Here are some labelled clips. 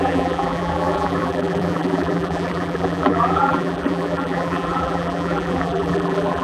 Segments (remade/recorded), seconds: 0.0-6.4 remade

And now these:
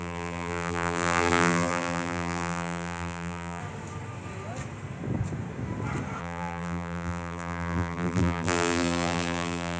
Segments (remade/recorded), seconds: 0.0-3.6 remade; 3.6-6.2 recorded; 6.2-9.8 remade

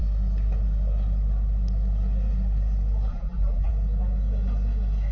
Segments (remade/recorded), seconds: 0.0-3.1 recorded; 3.1-3.7 remade; 3.7-5.1 recorded

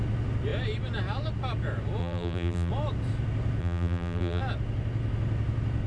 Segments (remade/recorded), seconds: 0.0-2.0 recorded; 2.0-2.7 remade; 2.7-3.6 recorded; 3.6-4.4 remade; 4.4-5.9 recorded

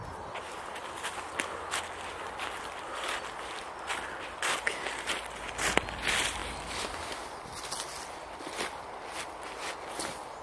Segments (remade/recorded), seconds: 0.0-10.4 recorded

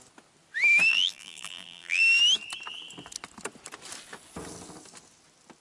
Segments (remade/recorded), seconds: 0.0-0.9 recorded; 0.9-2.0 remade; 2.0-5.6 recorded

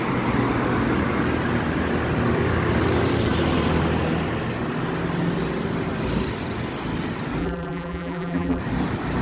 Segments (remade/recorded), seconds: 0.0-7.4 recorded; 7.4-8.6 remade; 8.6-9.2 recorded

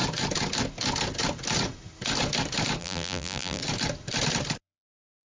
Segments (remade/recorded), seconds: 0.0-2.8 recorded; 2.8-3.6 remade; 3.6-4.6 recorded; 4.6-5.2 remade